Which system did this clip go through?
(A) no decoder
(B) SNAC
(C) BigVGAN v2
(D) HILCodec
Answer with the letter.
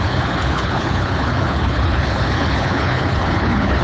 D